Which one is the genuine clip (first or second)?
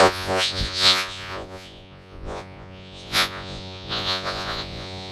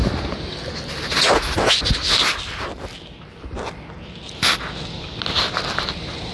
second